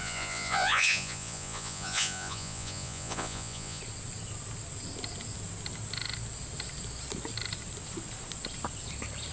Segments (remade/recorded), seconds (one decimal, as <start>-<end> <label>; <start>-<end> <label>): 0.0-3.8 remade; 3.8-9.3 recorded